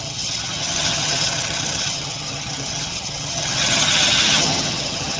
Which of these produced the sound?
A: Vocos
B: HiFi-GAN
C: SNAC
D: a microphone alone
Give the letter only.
B